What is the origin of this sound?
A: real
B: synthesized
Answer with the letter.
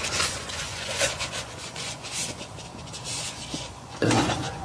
B